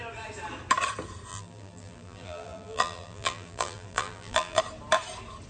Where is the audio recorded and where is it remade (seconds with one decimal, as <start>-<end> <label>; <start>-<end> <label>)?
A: 0.0-1.3 recorded; 1.3-4.6 remade; 4.6-5.5 recorded